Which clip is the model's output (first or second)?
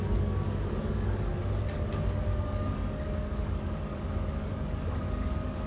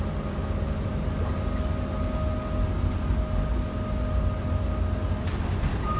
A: first